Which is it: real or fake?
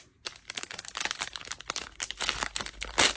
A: real